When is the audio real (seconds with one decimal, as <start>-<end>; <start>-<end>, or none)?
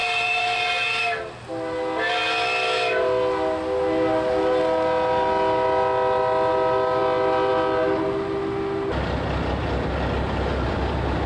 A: 0.7-11.3